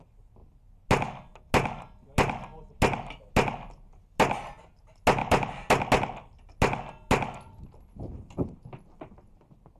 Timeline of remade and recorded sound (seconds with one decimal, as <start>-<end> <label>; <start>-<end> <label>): 0.0-9.8 recorded